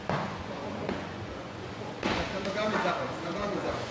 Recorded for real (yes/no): no